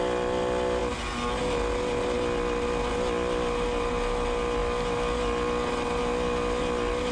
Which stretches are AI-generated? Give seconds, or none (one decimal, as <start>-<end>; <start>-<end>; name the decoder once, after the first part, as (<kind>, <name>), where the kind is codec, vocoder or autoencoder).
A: none